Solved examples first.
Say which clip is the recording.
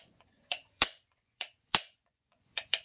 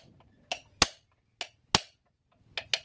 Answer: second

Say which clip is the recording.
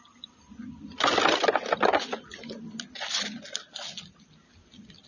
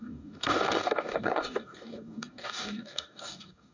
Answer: first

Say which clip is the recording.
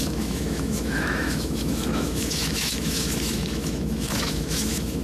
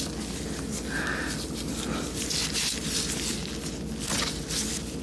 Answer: second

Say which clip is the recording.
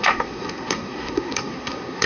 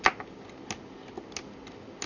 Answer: second